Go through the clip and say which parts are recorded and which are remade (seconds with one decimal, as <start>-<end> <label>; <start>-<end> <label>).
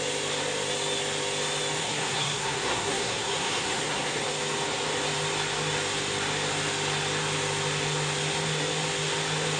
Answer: 0.0-1.8 recorded; 1.8-4.2 remade; 4.2-9.6 recorded